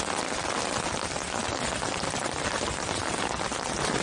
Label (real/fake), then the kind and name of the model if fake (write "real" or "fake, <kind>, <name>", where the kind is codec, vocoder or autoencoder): real